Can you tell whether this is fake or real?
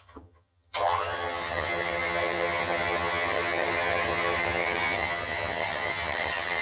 fake